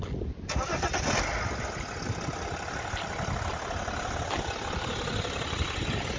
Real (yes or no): yes